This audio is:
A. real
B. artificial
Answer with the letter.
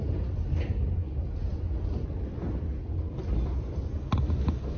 A